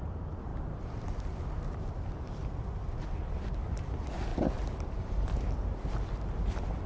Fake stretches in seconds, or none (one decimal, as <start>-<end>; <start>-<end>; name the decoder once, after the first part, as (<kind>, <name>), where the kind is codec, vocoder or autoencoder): none